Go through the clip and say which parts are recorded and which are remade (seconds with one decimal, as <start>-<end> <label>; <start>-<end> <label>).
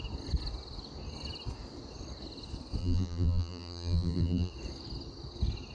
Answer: 0.0-2.8 recorded; 2.8-4.5 remade; 4.5-5.7 recorded